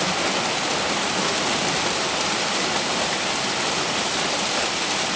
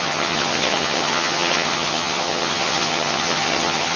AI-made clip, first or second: second